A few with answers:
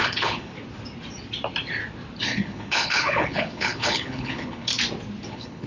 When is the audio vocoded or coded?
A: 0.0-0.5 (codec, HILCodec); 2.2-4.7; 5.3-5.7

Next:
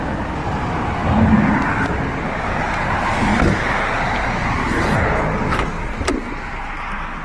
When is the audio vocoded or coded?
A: 1.0-1.5 (vocoder, BigVGAN v2)